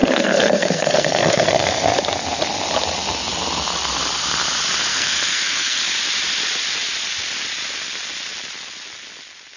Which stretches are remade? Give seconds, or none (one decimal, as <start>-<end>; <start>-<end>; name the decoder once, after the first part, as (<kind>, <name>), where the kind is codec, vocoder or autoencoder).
0.0-1.7 (codec, SNAC); 4.9-5.8